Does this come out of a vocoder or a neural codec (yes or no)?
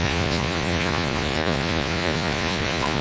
yes